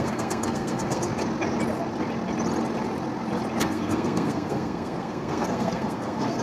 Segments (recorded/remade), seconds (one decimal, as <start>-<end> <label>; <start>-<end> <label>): 0.0-1.1 remade; 1.1-3.6 recorded; 3.6-6.4 remade